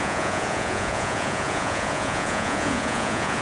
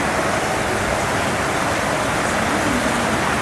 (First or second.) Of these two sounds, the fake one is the first